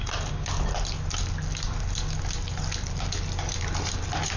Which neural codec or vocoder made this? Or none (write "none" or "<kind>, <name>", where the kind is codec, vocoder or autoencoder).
none